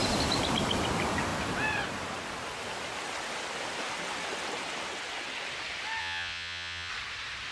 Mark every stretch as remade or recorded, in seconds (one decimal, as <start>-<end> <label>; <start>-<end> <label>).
0.0-6.0 recorded; 6.0-6.9 remade; 6.9-7.5 recorded